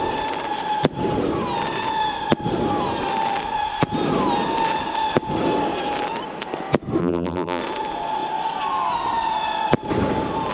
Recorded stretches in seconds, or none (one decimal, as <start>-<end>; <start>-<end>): 0.0-7.0; 7.6-10.5